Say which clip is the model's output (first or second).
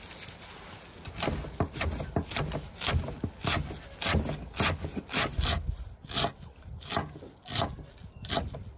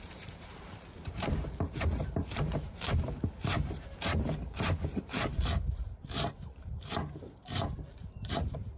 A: second